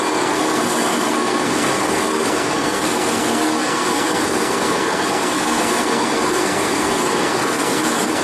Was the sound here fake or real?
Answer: fake